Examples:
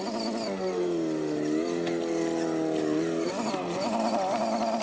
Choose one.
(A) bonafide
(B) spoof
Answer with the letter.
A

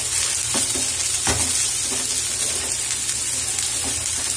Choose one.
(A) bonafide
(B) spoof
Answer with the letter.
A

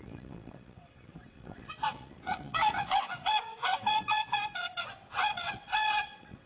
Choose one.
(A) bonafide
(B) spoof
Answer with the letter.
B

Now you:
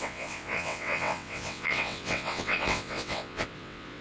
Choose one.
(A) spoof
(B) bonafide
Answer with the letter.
A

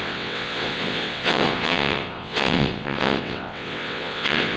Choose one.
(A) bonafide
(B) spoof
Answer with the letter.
B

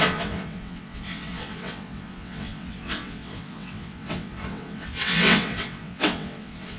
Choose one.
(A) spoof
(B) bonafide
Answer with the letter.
A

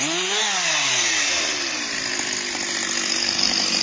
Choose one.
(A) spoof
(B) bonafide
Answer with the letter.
B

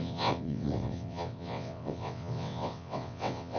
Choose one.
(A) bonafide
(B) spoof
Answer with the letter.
B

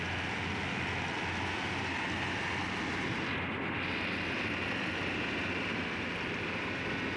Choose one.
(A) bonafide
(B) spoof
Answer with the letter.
A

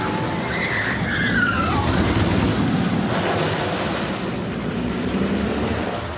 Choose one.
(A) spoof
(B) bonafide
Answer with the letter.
B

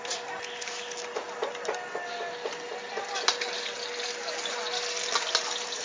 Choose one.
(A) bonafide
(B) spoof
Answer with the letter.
A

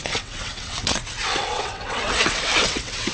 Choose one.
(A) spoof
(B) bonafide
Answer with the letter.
A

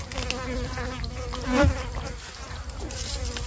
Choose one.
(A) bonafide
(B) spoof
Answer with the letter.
A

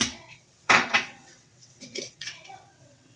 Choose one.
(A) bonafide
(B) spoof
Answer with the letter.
B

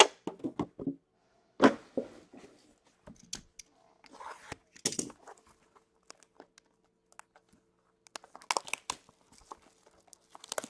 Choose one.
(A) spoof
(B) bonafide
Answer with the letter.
B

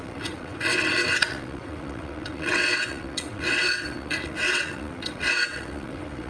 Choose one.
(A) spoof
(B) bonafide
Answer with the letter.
A